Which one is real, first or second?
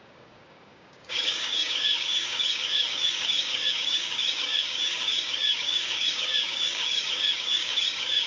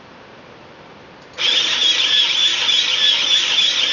second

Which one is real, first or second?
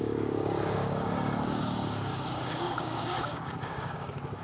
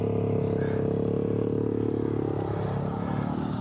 second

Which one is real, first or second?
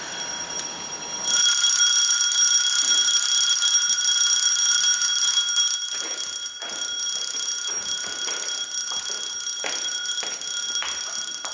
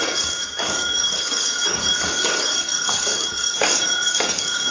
first